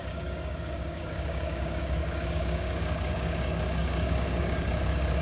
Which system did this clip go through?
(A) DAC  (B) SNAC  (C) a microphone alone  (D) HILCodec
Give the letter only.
A